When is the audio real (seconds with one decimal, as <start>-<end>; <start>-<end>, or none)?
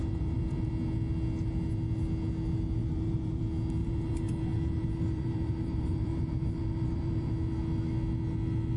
0.7-2.8; 3.4-3.8; 7.3-8.8